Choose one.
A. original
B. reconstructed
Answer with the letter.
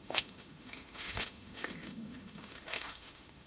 B